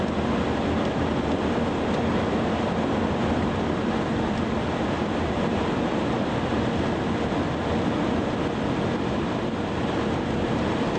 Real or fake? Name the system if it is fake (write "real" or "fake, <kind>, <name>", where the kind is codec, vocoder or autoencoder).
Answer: real